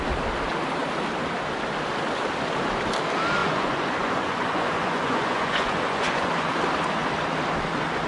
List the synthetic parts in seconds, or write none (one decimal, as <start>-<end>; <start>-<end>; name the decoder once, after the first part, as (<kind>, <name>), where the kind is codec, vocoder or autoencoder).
3.4-6.6 (vocoder, Vocos)